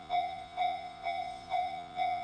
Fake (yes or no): yes